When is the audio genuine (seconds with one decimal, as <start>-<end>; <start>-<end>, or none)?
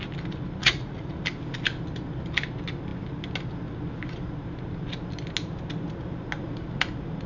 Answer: 0.0-0.6; 1.2-7.3